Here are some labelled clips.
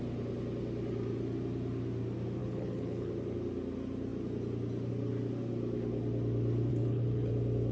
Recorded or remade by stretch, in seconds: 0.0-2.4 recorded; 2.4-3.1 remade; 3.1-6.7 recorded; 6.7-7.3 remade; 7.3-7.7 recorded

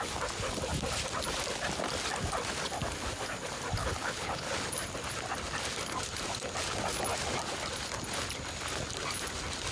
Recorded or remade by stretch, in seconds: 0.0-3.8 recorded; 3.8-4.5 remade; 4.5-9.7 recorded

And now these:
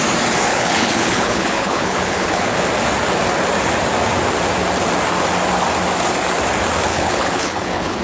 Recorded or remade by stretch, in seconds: 0.0-0.5 recorded; 0.5-2.5 remade; 2.5-6.9 recorded; 6.9-8.0 remade